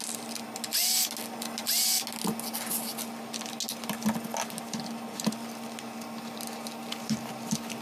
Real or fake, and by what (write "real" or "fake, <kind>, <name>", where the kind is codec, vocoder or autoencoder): real